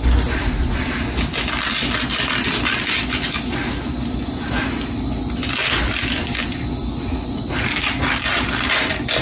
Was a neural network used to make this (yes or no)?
no